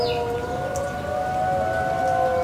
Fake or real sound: real